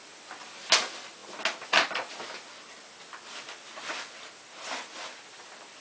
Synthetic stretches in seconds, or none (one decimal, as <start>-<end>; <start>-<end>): none